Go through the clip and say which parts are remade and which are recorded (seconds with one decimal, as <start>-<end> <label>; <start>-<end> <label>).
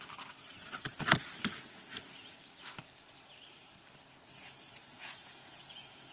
0.0-4.9 recorded; 4.9-6.1 remade